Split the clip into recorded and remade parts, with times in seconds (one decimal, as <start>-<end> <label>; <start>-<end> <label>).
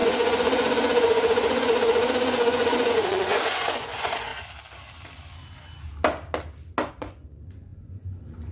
0.0-4.3 remade; 4.3-6.9 recorded; 6.9-8.5 remade